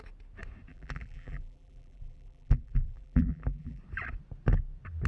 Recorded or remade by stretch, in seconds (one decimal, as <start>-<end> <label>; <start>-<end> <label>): 0.0-0.7 recorded; 0.7-3.8 remade; 3.8-5.1 recorded